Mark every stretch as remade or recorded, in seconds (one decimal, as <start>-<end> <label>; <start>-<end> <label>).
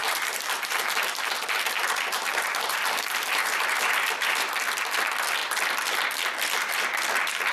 0.0-4.5 remade; 4.5-7.5 recorded